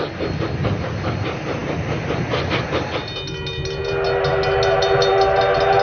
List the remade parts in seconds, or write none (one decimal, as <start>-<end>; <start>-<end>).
none